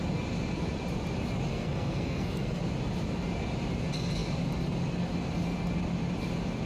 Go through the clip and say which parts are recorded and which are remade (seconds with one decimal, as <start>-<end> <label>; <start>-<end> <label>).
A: 0.0-1.5 recorded; 1.5-2.6 remade; 2.6-6.7 recorded